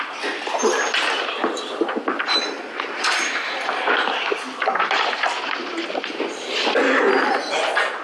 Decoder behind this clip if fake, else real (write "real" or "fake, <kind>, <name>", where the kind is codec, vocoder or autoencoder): real